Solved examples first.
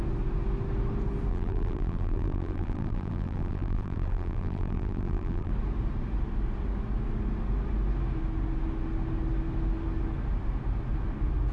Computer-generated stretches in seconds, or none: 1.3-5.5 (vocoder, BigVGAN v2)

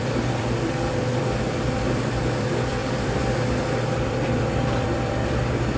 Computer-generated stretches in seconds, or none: 0.0-5.8 (vocoder, BigVGAN v2)

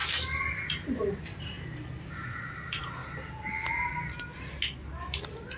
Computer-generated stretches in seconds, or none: 0.6-3.0 (vocoder, BigVGAN v2)

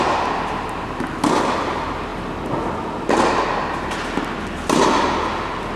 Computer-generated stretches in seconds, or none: none

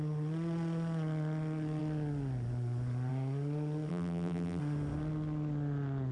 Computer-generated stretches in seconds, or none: 3.9-4.6 (vocoder, BigVGAN v2)